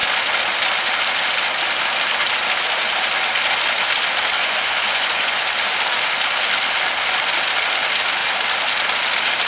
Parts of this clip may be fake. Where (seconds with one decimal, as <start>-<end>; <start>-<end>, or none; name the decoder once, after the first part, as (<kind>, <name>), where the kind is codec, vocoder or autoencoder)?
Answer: 4.4-5.4 (vocoder, Vocos)